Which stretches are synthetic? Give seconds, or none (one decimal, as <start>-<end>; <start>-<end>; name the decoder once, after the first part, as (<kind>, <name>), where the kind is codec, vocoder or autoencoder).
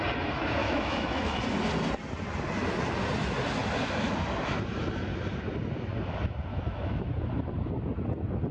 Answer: 0.6-1.4 (autoencoder, DAC-VAE); 6.5-7.0